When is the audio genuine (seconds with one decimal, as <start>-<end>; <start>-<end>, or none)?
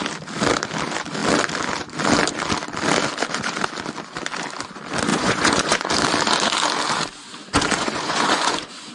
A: 0.0-5.1; 5.9-7.4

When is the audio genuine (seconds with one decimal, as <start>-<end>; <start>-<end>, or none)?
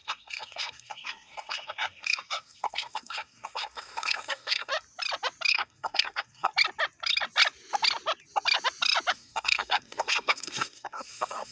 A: 4.7-5.5; 6.5-9.1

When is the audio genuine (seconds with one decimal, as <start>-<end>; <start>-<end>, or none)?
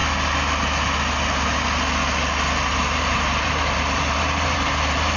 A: 0.0-2.7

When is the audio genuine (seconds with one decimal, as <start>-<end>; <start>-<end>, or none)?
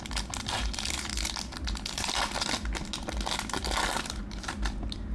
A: 0.0-5.1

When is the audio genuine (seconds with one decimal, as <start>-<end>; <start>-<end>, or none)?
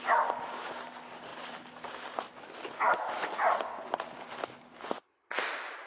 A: 0.0-5.9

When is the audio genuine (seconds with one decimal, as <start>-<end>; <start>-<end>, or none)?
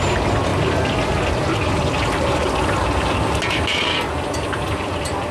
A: 0.0-5.3